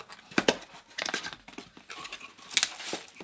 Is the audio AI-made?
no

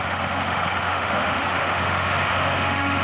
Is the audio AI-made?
yes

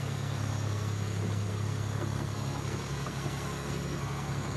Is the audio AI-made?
yes